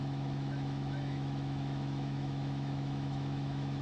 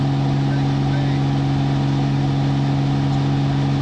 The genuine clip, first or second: second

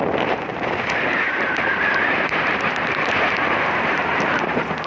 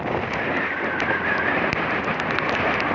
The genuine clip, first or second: second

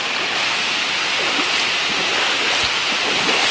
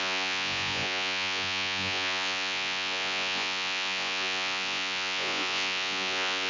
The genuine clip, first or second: first